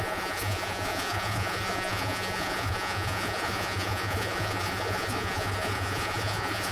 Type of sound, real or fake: fake